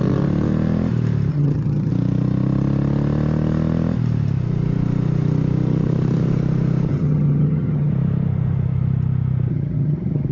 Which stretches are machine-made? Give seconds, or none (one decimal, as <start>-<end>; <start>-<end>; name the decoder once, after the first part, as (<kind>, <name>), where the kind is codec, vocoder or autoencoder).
1.3-1.9 (vocoder, HiFi-GAN); 6.9-7.9; 9.5-10.3

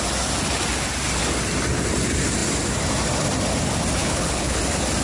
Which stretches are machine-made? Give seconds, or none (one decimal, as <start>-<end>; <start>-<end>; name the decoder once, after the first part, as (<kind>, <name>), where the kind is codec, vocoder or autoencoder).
4.0-4.6 (codec, HILCodec)

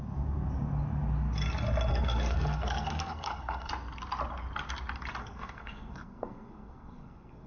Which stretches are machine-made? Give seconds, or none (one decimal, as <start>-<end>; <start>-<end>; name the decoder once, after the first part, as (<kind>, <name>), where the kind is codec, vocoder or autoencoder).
1.9-3.7 (codec, SNAC); 5.2-7.5

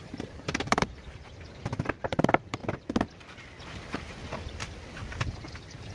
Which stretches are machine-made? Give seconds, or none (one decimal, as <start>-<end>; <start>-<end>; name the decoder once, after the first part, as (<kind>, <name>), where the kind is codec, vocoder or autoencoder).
0.0-2.6 (vocoder, BigVGAN v2); 3.6-4.2; 5.2-5.9

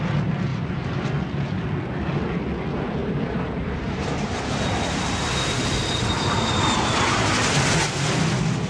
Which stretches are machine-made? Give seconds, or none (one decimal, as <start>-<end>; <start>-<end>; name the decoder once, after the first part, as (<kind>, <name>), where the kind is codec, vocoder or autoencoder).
0.5-1.1 (vocoder, BigVGAN v2); 3.0-4.6

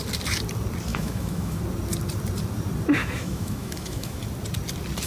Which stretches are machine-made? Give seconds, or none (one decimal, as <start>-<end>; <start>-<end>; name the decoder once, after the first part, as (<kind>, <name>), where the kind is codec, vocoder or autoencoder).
0.9-1.6 (autoencoder, DAC-VAE); 3.0-4.2

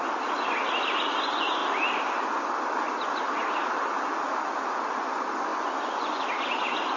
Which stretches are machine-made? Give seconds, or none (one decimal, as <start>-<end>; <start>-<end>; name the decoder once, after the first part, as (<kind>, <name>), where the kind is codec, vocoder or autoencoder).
5.5-6.3 (vocoder, Vocos)

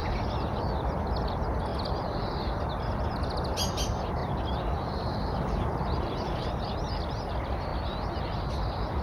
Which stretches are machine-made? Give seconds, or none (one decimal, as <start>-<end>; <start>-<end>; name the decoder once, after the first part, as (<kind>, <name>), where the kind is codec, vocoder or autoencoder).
4.2-6.6 (vocoder, BigVGAN v2)